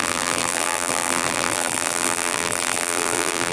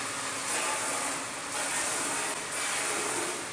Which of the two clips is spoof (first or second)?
first